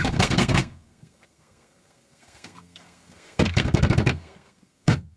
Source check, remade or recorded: remade